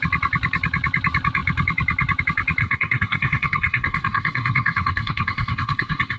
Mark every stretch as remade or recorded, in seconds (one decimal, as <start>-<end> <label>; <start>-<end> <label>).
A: 0.0-2.6 recorded; 2.6-6.2 remade